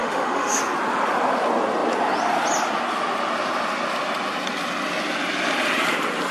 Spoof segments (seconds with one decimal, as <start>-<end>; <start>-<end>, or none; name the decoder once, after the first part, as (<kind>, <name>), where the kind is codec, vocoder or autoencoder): 0.0-0.6 (autoencoder, DAC-VAE)